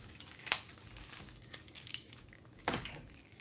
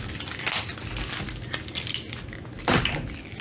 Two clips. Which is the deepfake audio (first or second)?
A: first